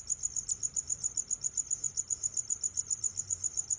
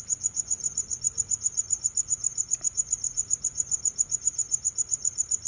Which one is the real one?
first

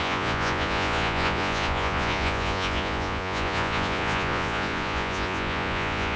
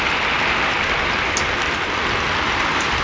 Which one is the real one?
second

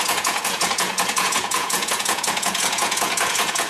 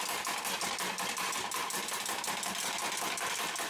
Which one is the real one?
second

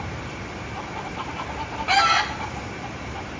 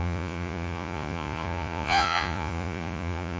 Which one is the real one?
first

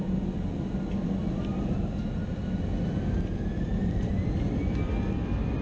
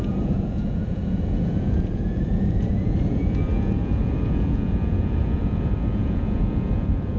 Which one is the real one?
first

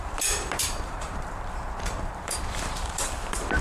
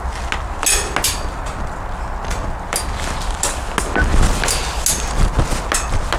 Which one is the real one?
second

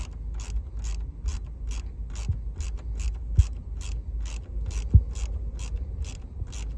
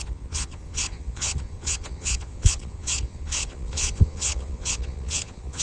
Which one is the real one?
first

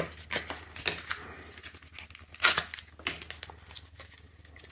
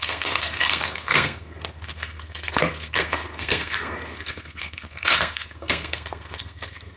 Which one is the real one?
first